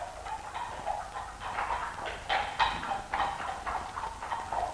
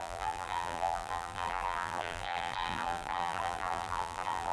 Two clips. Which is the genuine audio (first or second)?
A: first